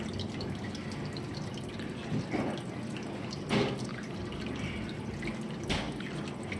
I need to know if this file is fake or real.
real